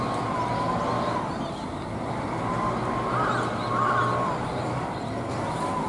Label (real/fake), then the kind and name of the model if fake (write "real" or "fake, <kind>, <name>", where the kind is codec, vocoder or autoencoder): real